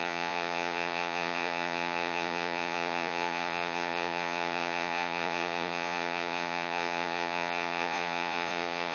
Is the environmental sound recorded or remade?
remade